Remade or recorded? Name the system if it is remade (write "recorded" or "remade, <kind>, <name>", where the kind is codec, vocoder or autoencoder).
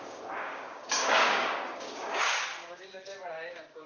remade, codec, DAC